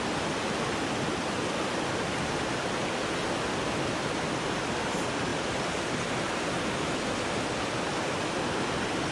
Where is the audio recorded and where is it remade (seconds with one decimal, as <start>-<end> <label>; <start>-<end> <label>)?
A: 0.0-9.1 recorded